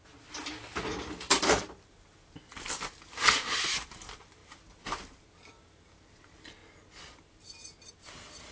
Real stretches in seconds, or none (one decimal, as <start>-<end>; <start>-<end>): 0.0-0.9; 2.6-8.5